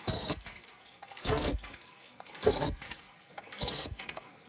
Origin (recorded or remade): remade